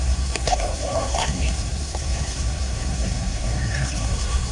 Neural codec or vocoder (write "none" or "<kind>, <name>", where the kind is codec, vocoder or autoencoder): codec, SNAC